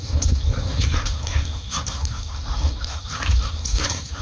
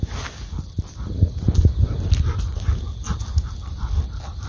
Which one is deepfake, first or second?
first